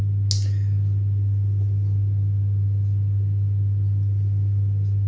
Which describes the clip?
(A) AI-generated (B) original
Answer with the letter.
B